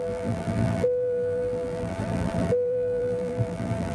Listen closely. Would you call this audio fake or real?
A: fake